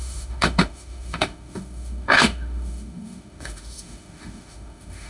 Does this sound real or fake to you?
fake